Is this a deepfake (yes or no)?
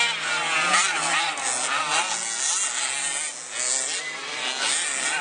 no